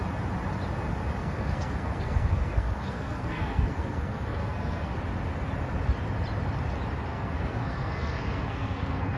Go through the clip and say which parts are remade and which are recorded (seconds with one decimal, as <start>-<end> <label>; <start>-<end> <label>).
0.0-1.2 recorded; 1.2-5.0 remade; 5.0-7.1 recorded; 7.1-9.2 remade